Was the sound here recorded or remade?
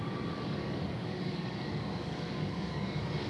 remade